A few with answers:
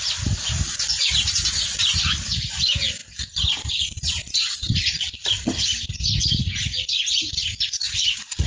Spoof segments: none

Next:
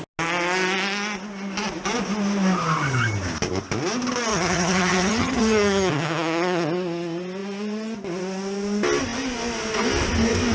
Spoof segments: 4.3-5.9

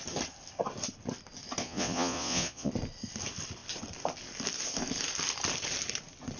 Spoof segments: 1.6-2.7

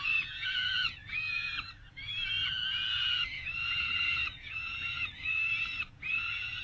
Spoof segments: 0.0-6.6